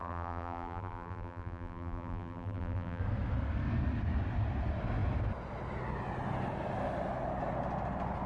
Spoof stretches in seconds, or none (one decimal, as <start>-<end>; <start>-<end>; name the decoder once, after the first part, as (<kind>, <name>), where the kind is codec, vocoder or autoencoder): 0.0-3.0 (vocoder, BigVGAN v2)

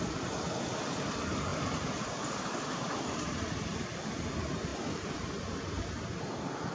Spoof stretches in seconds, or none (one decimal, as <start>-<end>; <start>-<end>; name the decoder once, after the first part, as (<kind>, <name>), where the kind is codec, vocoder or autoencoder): none

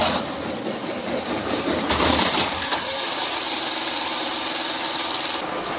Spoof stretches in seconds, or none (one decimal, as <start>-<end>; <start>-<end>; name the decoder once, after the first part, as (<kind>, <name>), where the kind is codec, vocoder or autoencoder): 1.0-4.5 (vocoder, BigVGAN v2)